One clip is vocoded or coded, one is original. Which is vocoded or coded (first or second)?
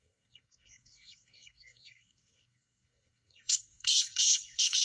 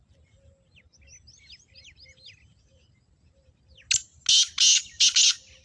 first